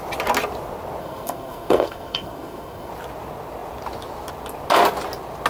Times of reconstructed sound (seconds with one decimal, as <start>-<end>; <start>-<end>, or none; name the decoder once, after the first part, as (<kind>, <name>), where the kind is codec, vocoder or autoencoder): 1.0-2.9 (codec, SNAC)

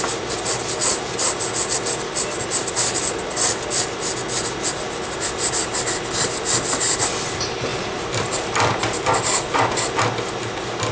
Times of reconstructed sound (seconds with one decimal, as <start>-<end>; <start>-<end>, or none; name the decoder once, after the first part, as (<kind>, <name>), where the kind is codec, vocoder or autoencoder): none

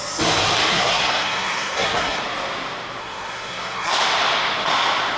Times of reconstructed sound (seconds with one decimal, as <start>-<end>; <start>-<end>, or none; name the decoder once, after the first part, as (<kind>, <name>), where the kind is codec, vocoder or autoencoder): 0.7-2.2 (codec, SNAC); 3.0-3.9